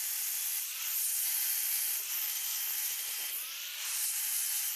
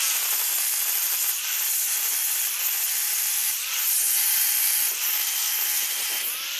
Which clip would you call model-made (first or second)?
first